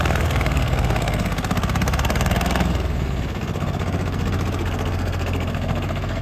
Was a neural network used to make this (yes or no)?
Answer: yes